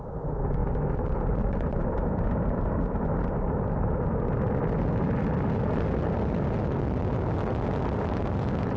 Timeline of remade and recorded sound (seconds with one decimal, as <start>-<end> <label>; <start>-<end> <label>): 0.0-0.6 recorded; 0.6-4.1 remade; 4.1-8.8 recorded